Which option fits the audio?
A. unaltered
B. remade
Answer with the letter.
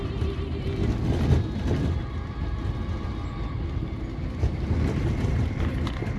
A